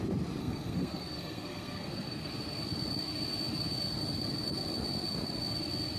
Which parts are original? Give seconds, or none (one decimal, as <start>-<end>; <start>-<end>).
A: 0.0-0.4; 2.3-6.0